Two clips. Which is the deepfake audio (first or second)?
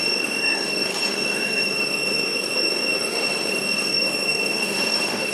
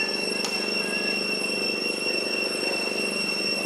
first